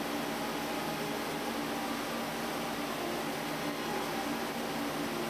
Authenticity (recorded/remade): recorded